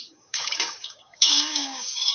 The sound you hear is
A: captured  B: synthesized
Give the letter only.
B